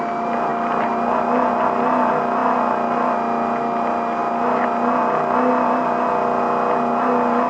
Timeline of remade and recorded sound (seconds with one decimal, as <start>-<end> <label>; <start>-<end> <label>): 0.0-7.5 recorded